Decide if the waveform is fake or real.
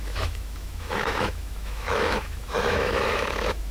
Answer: fake